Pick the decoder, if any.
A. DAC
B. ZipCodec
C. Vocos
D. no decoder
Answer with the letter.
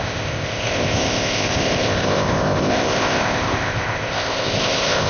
B